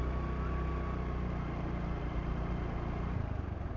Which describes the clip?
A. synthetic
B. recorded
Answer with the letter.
B